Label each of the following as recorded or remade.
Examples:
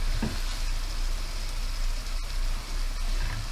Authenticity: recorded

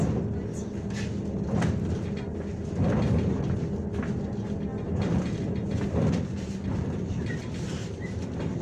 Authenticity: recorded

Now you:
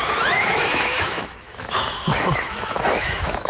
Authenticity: remade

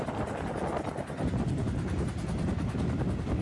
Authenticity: recorded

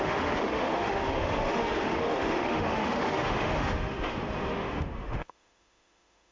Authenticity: remade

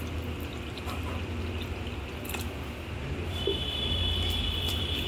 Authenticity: recorded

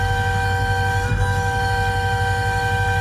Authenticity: remade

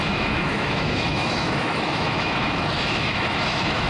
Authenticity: remade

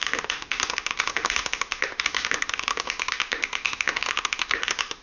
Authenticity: remade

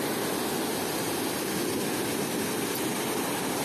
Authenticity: recorded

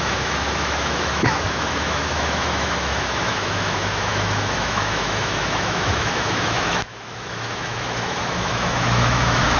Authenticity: remade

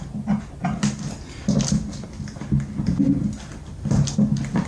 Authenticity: recorded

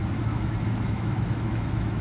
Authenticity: remade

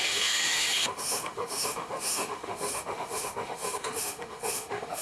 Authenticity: remade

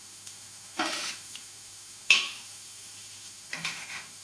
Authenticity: remade